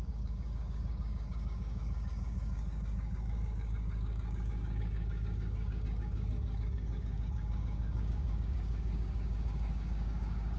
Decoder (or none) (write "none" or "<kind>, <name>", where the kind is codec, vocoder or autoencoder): codec, DAC